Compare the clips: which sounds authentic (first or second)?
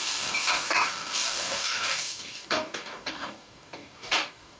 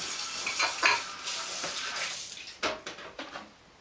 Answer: second